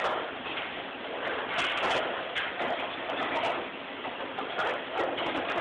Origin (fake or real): real